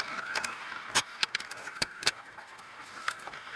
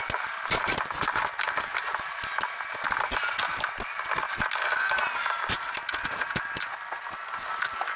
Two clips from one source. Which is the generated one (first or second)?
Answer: first